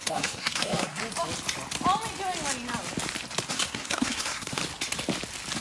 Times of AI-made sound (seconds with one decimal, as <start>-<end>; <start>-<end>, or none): 0.0-1.0; 3.5-4.6